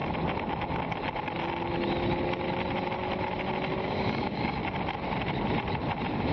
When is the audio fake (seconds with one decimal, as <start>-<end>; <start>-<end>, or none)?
3.8-4.6